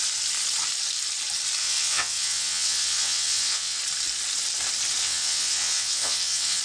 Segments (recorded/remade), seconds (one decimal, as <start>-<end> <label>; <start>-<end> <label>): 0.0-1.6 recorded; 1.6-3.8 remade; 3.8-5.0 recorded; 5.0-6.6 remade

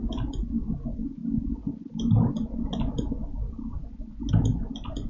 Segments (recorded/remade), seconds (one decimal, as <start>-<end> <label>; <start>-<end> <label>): 0.0-5.1 recorded

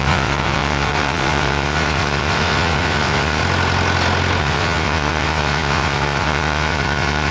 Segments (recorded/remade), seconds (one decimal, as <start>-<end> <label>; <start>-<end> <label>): 0.0-3.4 remade; 3.4-4.4 recorded; 4.4-7.3 remade

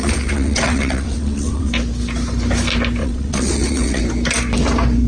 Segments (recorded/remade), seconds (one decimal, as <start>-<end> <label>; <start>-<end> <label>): 0.0-1.7 remade; 1.7-3.0 recorded; 3.0-4.0 remade; 4.0-5.1 recorded